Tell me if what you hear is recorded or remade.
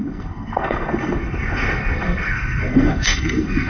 remade